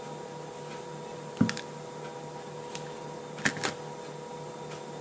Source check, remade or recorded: recorded